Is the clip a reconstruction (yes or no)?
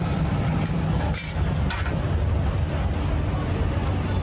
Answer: no